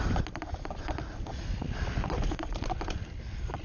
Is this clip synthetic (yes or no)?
no